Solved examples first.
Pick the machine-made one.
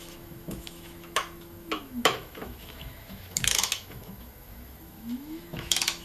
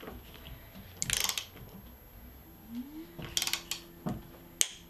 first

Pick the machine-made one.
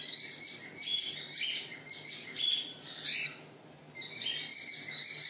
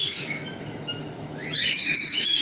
second